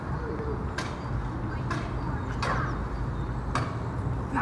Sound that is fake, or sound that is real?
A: real